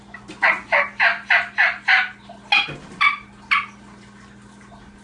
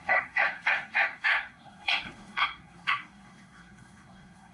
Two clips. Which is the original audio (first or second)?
first